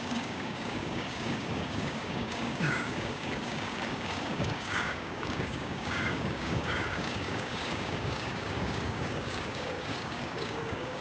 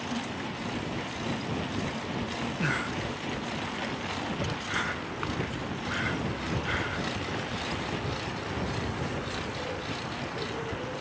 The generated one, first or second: first